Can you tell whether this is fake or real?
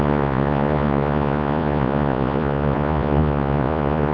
fake